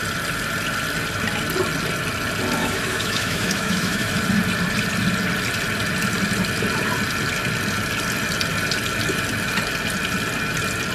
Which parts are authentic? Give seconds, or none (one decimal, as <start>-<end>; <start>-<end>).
0.0-2.6; 4.1-10.9